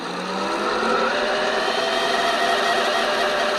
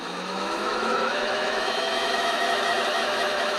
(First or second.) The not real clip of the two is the second